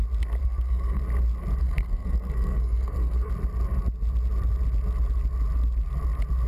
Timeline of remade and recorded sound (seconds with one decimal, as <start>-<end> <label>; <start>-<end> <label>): 0.0-0.4 recorded; 0.4-1.0 remade; 1.0-1.6 recorded; 1.6-3.3 remade; 3.3-6.5 recorded